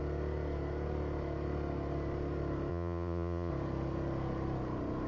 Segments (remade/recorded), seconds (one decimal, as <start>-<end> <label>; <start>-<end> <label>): 0.0-2.7 recorded; 2.7-3.5 remade; 3.5-5.1 recorded